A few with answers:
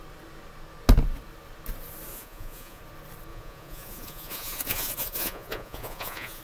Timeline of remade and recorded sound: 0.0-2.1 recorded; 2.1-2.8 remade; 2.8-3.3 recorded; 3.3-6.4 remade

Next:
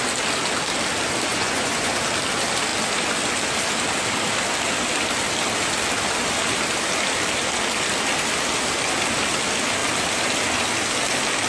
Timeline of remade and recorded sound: 0.0-1.3 recorded; 1.3-1.9 remade; 1.9-11.5 recorded